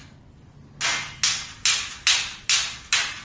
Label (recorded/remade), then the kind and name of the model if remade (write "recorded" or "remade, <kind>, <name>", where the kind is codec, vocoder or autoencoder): recorded